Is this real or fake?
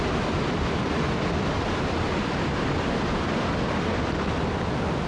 real